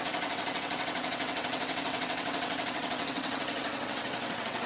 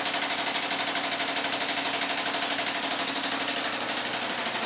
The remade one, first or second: first